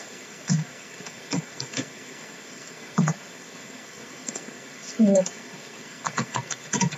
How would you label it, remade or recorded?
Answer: remade